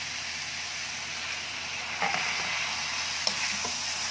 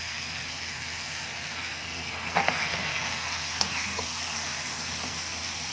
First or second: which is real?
first